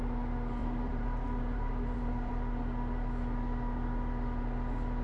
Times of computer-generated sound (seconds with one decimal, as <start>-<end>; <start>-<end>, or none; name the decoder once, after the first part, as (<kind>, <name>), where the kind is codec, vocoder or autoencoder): 0.6-2.3 (vocoder, BigVGAN v2)